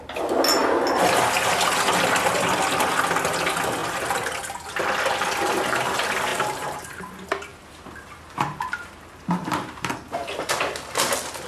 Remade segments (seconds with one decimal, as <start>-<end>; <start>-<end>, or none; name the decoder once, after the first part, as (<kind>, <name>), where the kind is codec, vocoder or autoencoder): 6.3-7.1 (vocoder, BigVGAN v2); 7.5-9.9